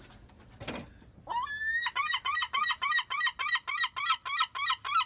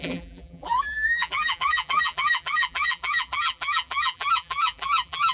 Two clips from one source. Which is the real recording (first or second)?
first